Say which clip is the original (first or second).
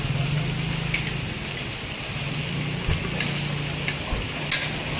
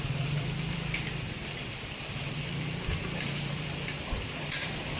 first